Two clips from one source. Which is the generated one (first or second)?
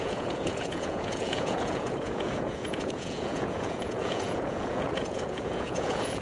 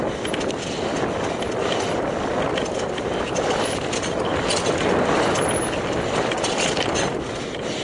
first